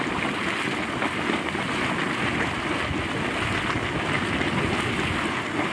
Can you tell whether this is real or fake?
real